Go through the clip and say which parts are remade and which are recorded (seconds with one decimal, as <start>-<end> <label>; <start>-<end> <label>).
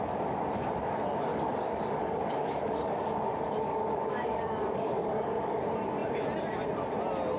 0.0-1.3 recorded; 1.3-3.3 remade; 3.3-3.7 recorded; 3.7-5.6 remade; 5.6-7.4 recorded